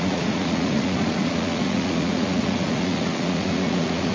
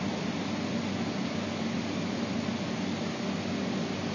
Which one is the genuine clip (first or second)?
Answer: second